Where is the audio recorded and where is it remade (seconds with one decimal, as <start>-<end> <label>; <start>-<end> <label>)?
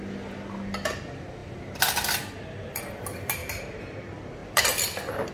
0.0-1.4 recorded; 1.4-2.8 remade; 2.8-5.3 recorded